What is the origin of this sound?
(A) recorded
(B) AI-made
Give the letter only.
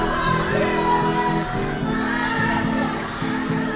A